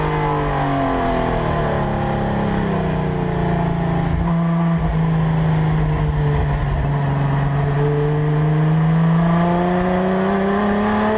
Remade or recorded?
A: recorded